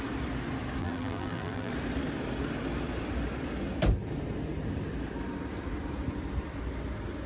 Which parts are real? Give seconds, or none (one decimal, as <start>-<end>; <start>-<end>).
0.0-0.8; 1.7-7.3